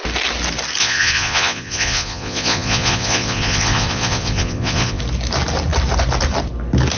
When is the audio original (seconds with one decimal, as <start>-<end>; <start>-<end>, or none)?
0.0-0.8; 5.0-7.0